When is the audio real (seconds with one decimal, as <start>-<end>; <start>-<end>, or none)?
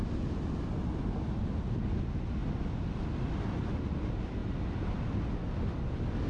0.0-6.3